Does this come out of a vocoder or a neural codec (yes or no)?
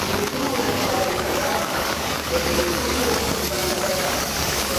yes